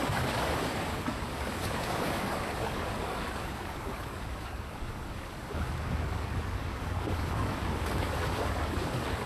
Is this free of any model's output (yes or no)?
no